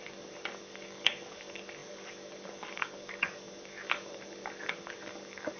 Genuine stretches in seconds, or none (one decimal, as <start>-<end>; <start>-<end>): none